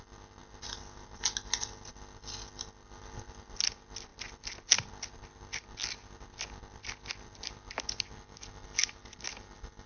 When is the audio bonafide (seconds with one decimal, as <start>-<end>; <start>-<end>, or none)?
0.0-9.9